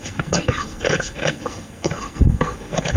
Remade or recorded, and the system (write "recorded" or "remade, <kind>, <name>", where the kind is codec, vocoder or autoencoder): remade, codec, SNAC